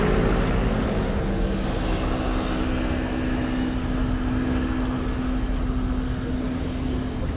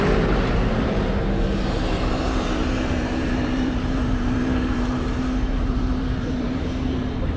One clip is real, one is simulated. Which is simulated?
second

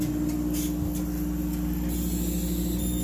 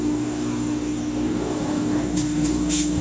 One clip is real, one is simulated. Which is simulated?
second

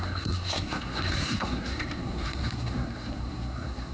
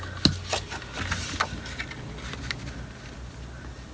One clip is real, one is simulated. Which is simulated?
first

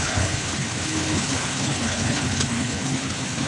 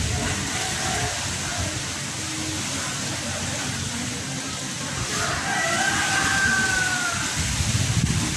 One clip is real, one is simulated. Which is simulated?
first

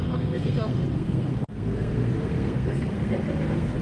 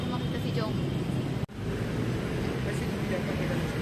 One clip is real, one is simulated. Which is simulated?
first